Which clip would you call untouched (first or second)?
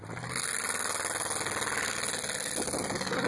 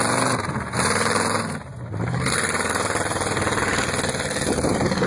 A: first